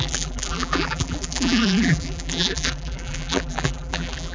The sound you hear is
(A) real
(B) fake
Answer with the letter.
B